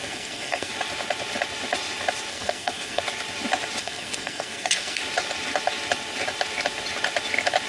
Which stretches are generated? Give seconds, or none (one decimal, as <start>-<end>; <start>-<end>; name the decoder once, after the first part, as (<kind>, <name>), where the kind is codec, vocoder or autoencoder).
0.0-0.7 (codec, SNAC); 2.3-3.0; 3.8-5.0